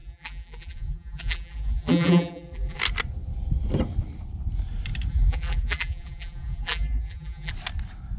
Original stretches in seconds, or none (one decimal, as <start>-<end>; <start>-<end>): 2.8-5.1; 7.5-8.2